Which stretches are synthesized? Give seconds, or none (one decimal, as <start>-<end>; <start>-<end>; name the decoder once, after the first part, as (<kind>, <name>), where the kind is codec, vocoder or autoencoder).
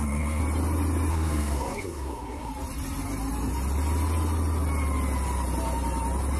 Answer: 0.0-0.4 (codec, SNAC); 1.1-2.5